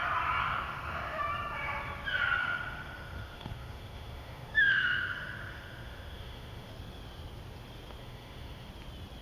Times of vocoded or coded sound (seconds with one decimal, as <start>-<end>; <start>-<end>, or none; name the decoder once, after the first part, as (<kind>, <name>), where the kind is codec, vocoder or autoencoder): 0.4-1.2 (autoencoder, DAC-VAE); 2.4-6.7; 8.0-8.7